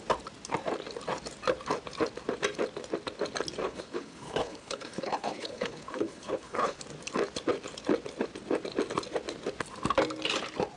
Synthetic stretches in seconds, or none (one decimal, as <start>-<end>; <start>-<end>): 3.6-6.8